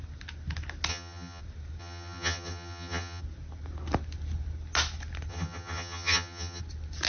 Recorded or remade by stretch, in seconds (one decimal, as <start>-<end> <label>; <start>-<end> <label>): 0.0-0.9 recorded; 0.9-1.4 remade; 1.4-1.8 recorded; 1.8-3.2 remade; 3.2-5.3 recorded; 5.3-6.6 remade; 6.6-7.1 recorded

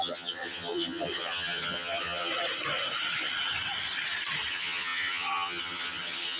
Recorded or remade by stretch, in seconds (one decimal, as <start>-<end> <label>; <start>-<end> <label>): 0.0-2.3 remade; 2.3-4.5 recorded; 4.5-6.4 remade

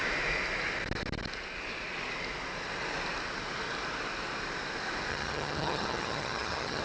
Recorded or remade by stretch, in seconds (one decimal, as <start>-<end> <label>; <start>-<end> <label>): 0.0-5.1 recorded; 5.1-6.8 remade

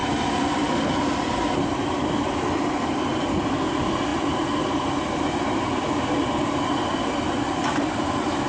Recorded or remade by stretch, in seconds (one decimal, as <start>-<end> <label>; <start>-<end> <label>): 0.0-8.5 recorded

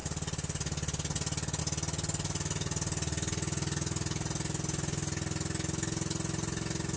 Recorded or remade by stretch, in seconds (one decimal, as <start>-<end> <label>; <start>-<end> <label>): 0.0-7.0 recorded

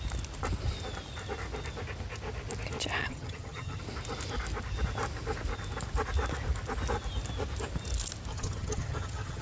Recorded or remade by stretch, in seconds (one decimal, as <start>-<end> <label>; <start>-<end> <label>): 0.0-3.0 recorded; 3.0-3.8 remade; 3.8-8.3 recorded; 8.3-9.4 remade

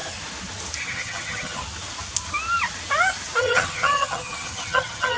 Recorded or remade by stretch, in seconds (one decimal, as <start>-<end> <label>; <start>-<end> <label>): 0.0-0.8 recorded; 0.8-1.6 remade; 1.6-3.4 recorded; 3.4-5.2 remade

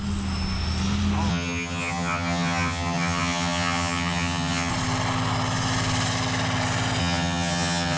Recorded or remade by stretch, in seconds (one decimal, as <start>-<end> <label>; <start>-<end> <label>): 0.0-1.3 recorded; 1.3-4.7 remade; 4.7-7.0 recorded; 7.0-8.0 remade